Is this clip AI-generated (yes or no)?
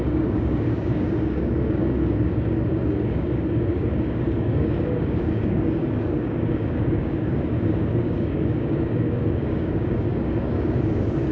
yes